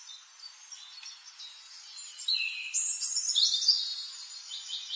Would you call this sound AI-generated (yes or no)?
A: no